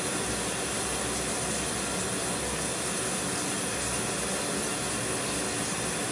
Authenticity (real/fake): real